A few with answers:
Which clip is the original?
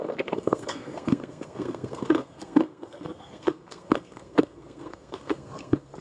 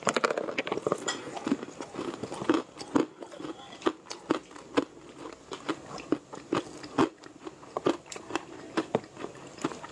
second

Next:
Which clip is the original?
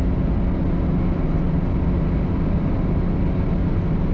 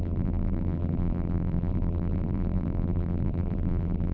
first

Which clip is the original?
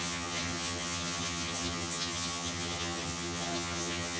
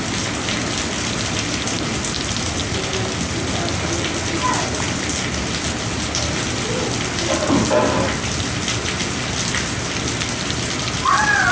second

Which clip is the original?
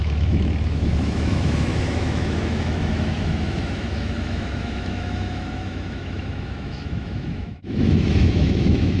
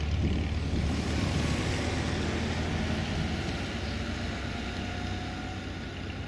second